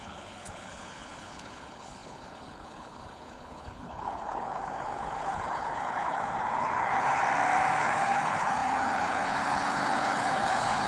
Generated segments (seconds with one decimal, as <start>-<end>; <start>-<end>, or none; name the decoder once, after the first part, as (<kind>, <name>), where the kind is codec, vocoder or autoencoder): 0.0-7.2 (codec, HILCodec); 7.8-10.9